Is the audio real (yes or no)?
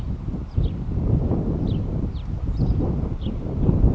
no